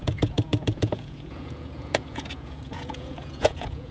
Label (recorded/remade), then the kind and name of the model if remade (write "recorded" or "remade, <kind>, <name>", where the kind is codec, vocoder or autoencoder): remade, vocoder, Vocos